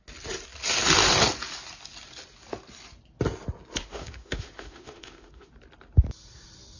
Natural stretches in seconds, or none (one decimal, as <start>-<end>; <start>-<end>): 0.0-3.8; 5.5-6.8